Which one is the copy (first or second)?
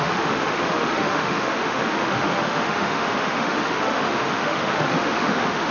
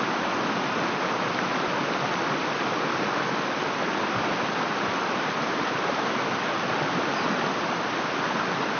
first